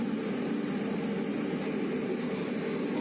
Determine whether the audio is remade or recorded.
recorded